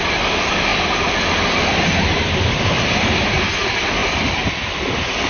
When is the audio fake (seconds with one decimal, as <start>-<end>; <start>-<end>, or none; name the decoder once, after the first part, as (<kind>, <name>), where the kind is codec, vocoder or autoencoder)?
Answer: none